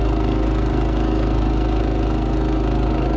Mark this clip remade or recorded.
remade